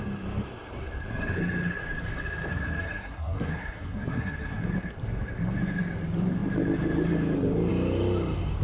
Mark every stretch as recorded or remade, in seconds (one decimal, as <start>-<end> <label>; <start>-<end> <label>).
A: 0.0-2.5 recorded; 2.5-4.6 remade; 4.6-8.6 recorded